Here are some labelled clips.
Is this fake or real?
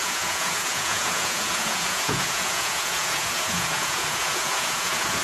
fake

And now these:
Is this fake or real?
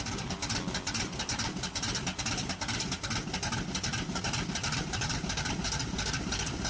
real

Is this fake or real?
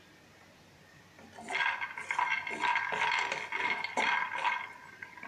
real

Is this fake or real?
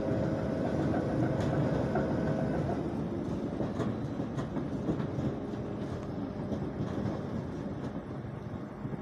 real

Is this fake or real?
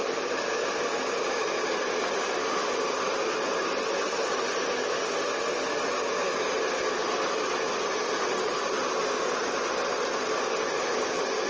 real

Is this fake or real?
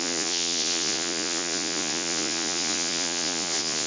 fake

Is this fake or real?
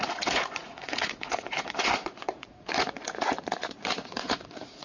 fake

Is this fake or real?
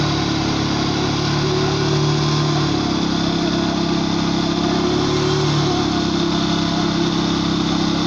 real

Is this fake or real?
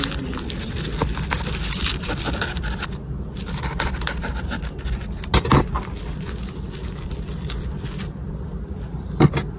real